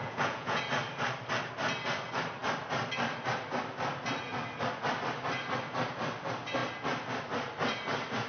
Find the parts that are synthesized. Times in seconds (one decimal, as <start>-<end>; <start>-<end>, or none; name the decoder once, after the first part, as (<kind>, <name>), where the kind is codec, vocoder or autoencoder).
0.0-0.6 (vocoder, Vocos)

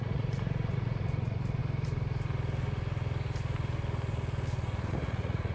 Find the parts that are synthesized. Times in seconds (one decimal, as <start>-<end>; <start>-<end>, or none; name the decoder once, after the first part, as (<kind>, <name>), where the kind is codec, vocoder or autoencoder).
0.0-1.6 (vocoder, Vocos); 4.9-5.5

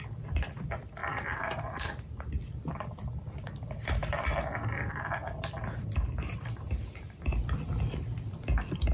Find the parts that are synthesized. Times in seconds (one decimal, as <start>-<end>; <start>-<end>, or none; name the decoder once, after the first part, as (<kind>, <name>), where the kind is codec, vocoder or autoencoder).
0.0-4.0 (vocoder, BigVGAN v2); 5.8-8.9

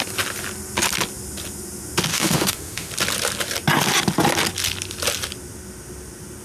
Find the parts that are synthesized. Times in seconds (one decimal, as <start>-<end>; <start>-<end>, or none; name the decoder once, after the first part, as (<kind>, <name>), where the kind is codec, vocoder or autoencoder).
2.1-2.9 (autoencoder, DAC-VAE)

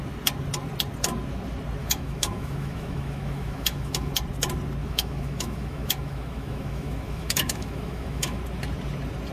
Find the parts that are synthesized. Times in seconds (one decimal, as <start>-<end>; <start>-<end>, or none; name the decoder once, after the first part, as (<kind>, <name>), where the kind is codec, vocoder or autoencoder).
1.8-4.1 (autoencoder, DAC-VAE); 4.8-8.4

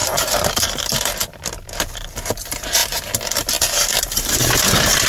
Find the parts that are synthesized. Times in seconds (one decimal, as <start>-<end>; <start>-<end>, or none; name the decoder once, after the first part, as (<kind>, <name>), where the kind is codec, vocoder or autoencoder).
0.0-2.8 (vocoder, BigVGAN v2); 4.0-5.1

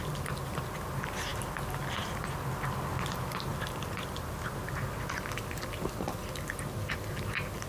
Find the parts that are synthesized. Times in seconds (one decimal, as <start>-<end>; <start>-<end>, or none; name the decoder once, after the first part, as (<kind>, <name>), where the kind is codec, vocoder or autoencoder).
none

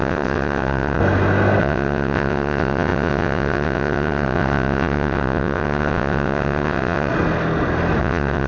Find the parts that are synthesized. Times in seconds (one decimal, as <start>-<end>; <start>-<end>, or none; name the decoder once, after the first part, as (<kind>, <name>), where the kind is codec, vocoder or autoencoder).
0.0-1.0 (vocoder, WaveNeXt); 1.6-7.1; 8.0-8.5